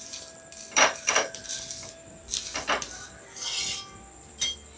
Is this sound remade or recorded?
remade